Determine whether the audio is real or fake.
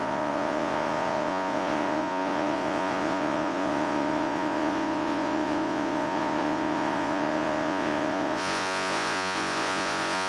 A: fake